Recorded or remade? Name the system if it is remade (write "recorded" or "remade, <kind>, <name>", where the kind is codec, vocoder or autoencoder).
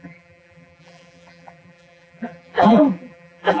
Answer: remade, vocoder, BigVGAN v2